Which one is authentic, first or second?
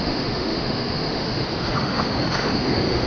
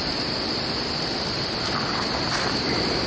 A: second